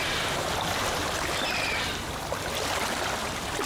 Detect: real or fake real